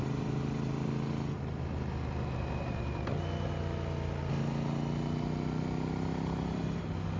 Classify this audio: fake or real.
real